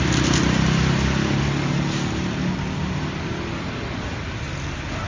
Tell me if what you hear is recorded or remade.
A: recorded